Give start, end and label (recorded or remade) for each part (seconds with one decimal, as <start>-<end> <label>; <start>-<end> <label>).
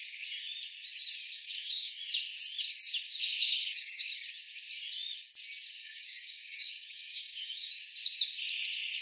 0.0-1.2 recorded; 1.2-2.0 remade; 2.0-3.3 recorded; 3.3-4.1 remade; 4.1-5.8 recorded; 5.8-7.7 remade; 7.7-9.0 recorded